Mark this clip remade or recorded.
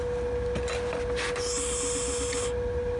recorded